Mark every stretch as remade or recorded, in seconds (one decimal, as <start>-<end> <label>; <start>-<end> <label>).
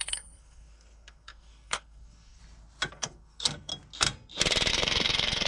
0.0-2.4 remade; 2.4-2.9 recorded; 2.9-3.7 remade; 3.7-4.7 recorded; 4.7-5.5 remade